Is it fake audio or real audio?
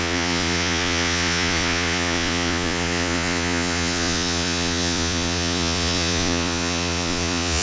fake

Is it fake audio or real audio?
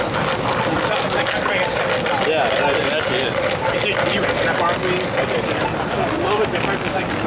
real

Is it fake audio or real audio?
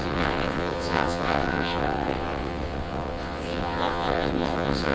fake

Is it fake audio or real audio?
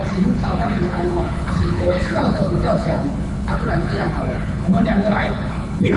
fake